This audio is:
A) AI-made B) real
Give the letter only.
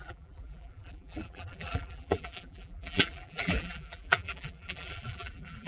A